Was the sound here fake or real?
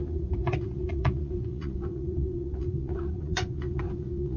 fake